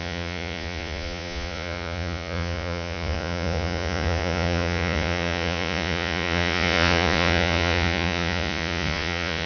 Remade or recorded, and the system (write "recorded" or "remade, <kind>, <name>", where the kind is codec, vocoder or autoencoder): remade, vocoder, Vocos